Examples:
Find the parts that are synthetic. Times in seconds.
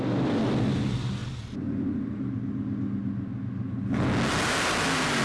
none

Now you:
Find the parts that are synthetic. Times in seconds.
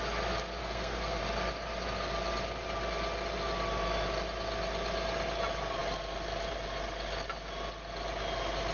0.6-1.2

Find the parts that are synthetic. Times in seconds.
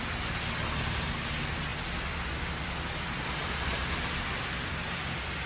none